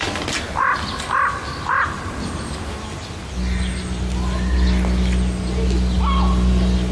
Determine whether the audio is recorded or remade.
recorded